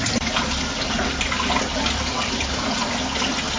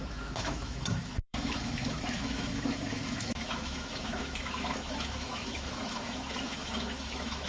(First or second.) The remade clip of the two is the second